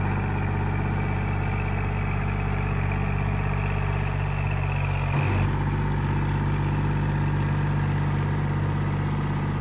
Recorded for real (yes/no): yes